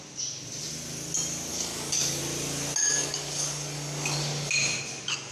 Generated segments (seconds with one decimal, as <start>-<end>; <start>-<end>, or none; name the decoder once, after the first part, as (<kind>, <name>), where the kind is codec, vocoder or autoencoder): 1.5-2.2 (codec, DAC); 2.8-4.5